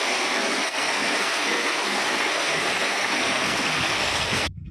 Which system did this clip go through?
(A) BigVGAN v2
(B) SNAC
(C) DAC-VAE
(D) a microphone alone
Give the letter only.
B